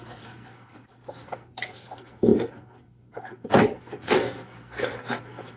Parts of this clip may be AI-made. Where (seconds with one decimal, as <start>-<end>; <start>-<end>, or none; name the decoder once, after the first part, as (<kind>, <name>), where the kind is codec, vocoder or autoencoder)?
0.0-5.6 (codec, SNAC)